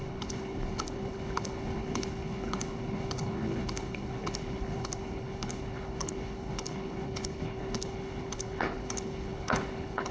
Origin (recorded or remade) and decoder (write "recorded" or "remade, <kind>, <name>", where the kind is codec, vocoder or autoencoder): remade, codec, HILCodec